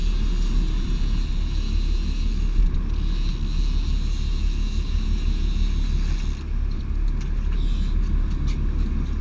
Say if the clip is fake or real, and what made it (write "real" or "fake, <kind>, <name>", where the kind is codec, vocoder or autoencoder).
real